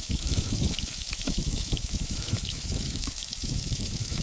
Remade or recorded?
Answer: remade